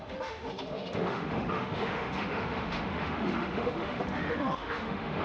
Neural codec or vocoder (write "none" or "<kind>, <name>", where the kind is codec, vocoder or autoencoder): autoencoder, DAC-VAE